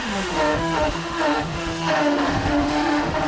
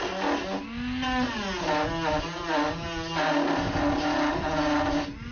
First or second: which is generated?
first